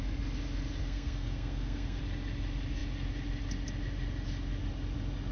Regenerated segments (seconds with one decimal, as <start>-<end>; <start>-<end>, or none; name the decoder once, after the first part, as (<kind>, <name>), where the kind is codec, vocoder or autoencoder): 0.8-2.0 (codec, SNAC)

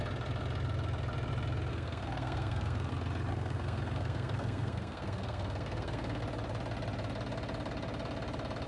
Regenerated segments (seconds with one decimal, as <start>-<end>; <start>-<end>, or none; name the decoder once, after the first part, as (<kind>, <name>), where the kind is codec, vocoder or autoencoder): 1.7-2.9 (codec, SNAC); 3.3-6.2

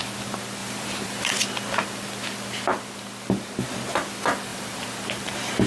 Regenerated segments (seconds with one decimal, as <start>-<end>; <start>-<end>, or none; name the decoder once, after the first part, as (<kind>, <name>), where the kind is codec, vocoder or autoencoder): 0.6-1.3 (vocoder, BigVGAN v2); 4.5-5.7

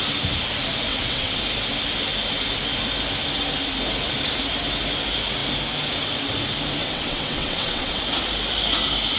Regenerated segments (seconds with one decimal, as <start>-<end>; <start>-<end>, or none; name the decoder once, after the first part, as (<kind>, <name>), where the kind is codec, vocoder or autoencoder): 0.9-1.4 (vocoder, WaveNeXt); 6.8-8.0

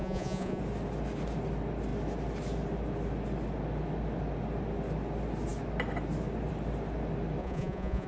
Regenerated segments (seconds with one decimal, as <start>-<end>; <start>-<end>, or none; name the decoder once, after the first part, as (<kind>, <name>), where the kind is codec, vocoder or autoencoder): 0.0-0.6 (vocoder, Vocos); 7.4-8.1